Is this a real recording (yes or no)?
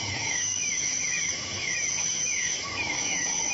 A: no